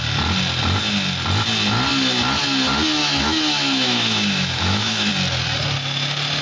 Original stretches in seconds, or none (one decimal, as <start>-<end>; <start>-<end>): 0.0-3.0; 5.1-6.4